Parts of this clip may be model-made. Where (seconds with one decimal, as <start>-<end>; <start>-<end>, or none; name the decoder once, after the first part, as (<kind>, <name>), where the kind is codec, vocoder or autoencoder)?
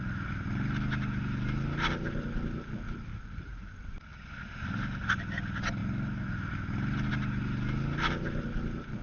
3.1-3.7 (vocoder, Vocos)